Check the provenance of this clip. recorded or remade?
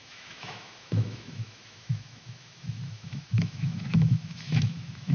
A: remade